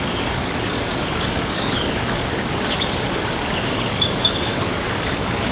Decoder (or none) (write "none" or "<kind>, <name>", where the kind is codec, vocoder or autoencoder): codec, DAC